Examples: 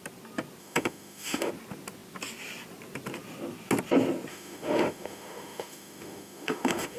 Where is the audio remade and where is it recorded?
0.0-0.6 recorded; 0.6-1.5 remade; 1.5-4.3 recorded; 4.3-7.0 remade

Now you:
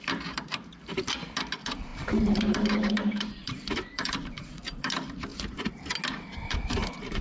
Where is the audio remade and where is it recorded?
0.0-5.3 remade; 5.3-6.1 recorded; 6.1-7.2 remade

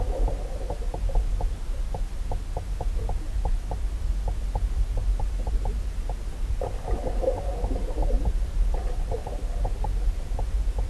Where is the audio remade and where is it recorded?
0.0-10.9 recorded

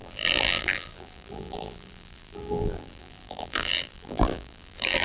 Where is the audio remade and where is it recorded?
0.0-5.0 remade

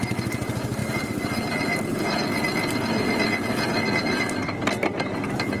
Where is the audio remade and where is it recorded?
0.0-5.6 recorded

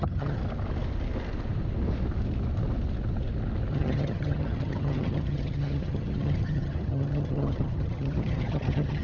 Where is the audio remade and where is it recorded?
0.0-0.4 remade; 0.4-3.7 recorded; 3.7-9.0 remade

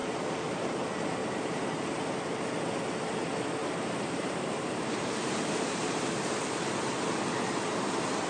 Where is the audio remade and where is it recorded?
0.0-0.7 remade; 0.7-1.2 recorded; 1.2-1.9 remade; 1.9-3.6 recorded; 3.6-5.9 remade; 5.9-8.3 recorded

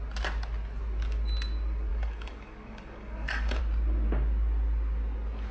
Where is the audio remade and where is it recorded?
0.0-1.9 recorded; 1.9-3.6 remade; 3.6-5.5 recorded